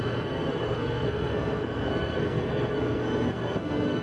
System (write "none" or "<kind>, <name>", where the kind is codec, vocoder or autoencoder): codec, SNAC